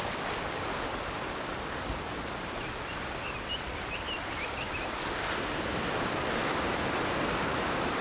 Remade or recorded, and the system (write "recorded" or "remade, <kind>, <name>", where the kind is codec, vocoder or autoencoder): remade, vocoder, BigVGAN v2